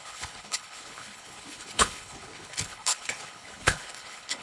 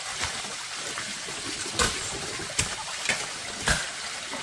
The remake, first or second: first